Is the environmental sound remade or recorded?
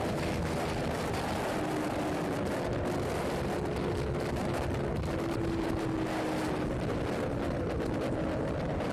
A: recorded